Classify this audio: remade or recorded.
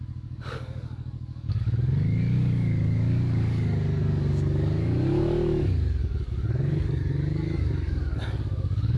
remade